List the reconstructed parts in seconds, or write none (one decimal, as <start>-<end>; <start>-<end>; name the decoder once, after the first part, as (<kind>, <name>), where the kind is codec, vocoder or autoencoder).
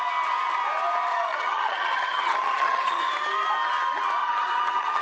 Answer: 1.1-3.0 (vocoder, HiFi-GAN); 4.2-5.0